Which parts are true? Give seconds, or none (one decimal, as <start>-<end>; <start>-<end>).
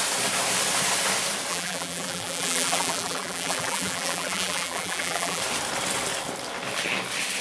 0.0-1.5; 5.4-7.4